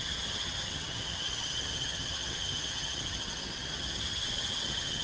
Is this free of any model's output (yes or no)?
no